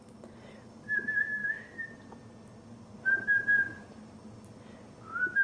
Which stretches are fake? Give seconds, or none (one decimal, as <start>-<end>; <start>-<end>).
none